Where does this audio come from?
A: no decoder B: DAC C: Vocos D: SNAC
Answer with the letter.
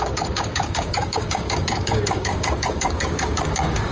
B